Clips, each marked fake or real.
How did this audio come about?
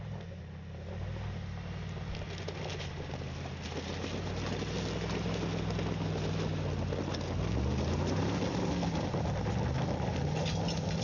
real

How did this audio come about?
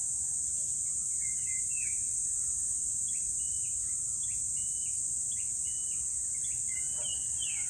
real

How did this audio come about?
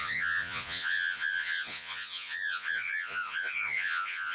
fake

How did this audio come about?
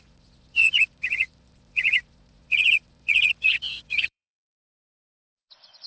fake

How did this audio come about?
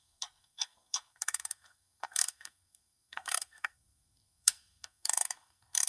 fake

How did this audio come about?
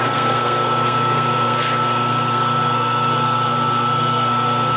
fake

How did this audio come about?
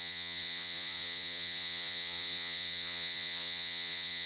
fake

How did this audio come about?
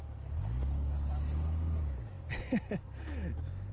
real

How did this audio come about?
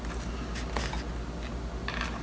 real